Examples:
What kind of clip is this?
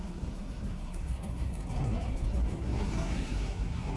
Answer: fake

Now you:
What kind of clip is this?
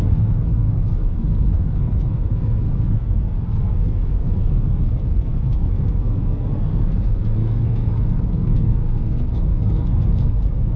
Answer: fake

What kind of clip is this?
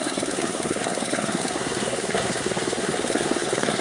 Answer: fake